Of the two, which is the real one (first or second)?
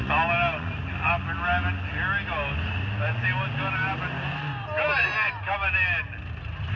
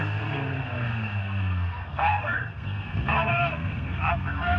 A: first